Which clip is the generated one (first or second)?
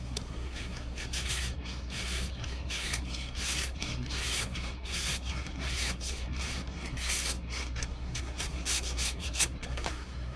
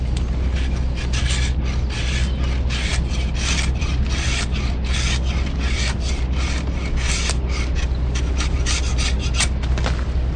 first